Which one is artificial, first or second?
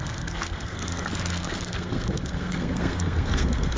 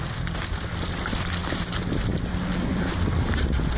first